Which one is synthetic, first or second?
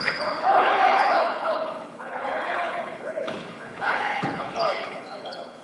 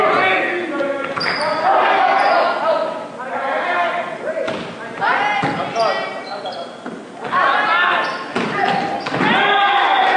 first